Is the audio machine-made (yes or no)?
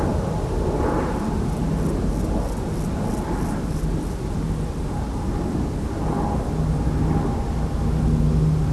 no